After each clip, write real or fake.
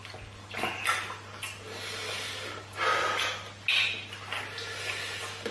real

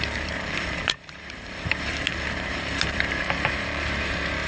fake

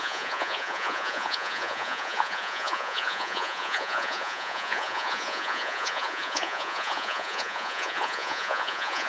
fake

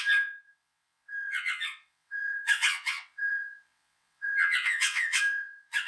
fake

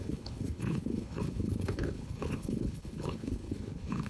fake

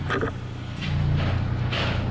real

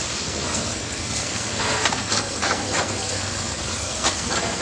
fake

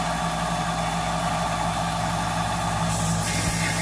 real